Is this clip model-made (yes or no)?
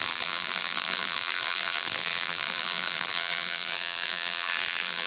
yes